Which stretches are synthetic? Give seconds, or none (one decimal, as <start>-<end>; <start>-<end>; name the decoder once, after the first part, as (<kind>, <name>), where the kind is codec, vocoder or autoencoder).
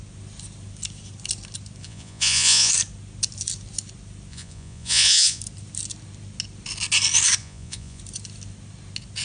1.8-2.7 (vocoder, Vocos); 4.3-5.4; 7.4-8.0